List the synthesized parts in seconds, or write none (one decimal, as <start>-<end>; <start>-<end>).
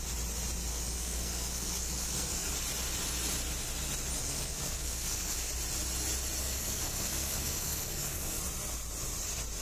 0.7-2.5; 4.2-5.5; 6.4-8.4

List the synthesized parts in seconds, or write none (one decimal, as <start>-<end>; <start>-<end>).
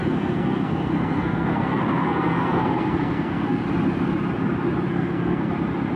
0.0-3.6; 4.9-5.5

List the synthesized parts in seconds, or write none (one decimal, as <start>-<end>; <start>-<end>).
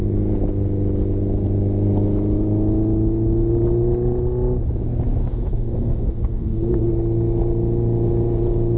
5.2-6.9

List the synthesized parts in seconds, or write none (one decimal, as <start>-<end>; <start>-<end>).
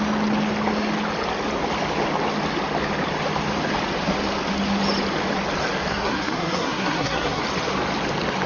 5.9-7.4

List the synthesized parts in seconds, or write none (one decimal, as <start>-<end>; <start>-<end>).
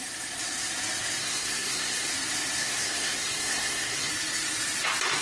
1.2-2.1; 2.6-4.1